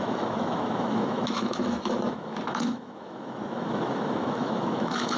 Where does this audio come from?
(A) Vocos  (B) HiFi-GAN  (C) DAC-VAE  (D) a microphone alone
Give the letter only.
C